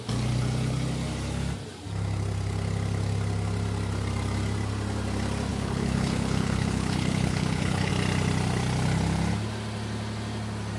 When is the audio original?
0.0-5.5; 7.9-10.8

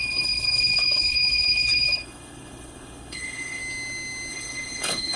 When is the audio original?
3.6-4.3

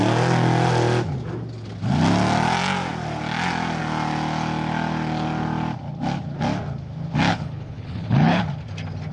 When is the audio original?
0.0-7.3; 8.4-9.1